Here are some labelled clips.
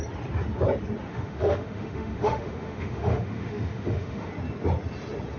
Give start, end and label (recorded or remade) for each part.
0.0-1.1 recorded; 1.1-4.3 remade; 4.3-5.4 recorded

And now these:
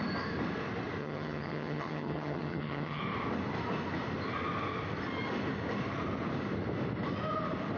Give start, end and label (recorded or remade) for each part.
0.0-1.0 recorded; 1.0-3.0 remade; 3.0-7.8 recorded

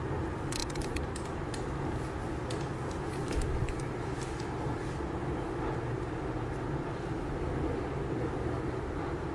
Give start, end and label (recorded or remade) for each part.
0.0-0.6 recorded; 0.6-1.2 remade; 1.2-3.2 recorded; 3.2-4.3 remade; 4.3-9.3 recorded

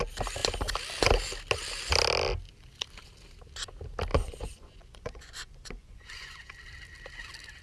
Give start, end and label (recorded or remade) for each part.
0.0-4.1 recorded; 4.1-6.5 remade; 6.5-7.6 recorded

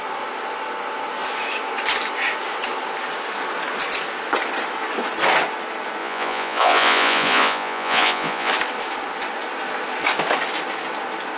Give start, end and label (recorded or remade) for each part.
0.0-6.0 recorded; 6.0-8.5 remade; 8.5-11.4 recorded

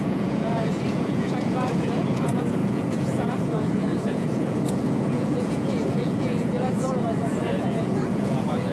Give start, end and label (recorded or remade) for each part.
0.0-8.7 remade

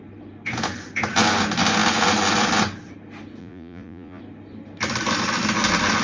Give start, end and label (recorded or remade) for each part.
0.0-3.4 recorded; 3.4-4.2 remade; 4.2-6.0 recorded

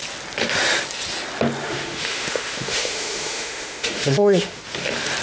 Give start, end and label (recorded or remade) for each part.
0.0-1.6 recorded; 1.6-4.6 remade; 4.6-5.2 recorded